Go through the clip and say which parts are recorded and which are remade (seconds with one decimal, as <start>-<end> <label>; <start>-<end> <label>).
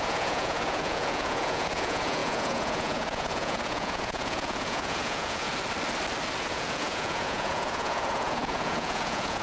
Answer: 0.0-5.5 remade; 5.5-6.4 recorded; 6.4-9.4 remade